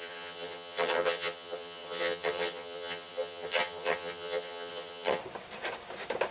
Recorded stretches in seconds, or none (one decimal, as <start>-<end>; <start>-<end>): 5.2-6.3